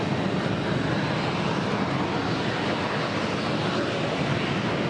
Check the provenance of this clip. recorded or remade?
recorded